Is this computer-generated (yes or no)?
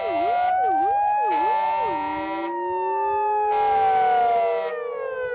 no